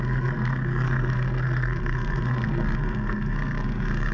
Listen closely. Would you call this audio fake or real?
fake